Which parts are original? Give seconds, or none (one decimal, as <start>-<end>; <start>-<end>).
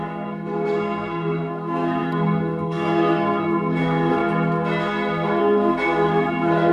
4.2-5.4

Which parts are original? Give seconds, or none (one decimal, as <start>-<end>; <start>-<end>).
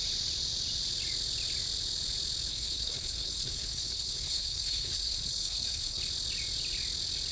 0.0-2.5; 6.0-7.3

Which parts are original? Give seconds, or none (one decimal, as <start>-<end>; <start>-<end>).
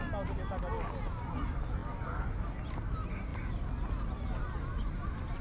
0.0-5.4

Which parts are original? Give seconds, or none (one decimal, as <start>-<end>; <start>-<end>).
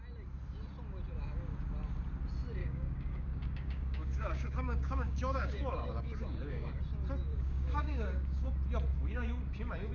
0.0-2.6; 6.8-7.3; 8.5-8.9; 9.4-9.9